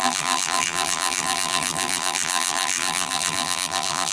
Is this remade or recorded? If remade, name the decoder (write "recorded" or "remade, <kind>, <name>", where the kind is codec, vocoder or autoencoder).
remade, vocoder, BigVGAN v2